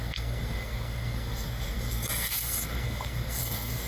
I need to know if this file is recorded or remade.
remade